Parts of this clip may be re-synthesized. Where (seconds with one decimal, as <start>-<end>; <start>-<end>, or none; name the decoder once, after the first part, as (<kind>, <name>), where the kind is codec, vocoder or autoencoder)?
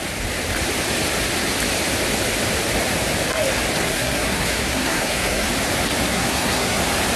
3.8-5.5 (codec, SNAC); 6.1-6.8